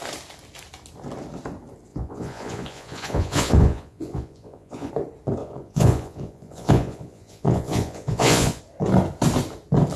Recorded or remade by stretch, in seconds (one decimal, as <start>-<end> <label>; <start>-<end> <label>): 0.0-1.9 recorded; 1.9-4.9 remade; 4.9-5.4 recorded; 5.4-8.6 remade; 8.6-10.0 recorded